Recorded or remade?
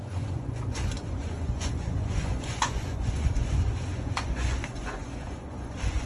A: remade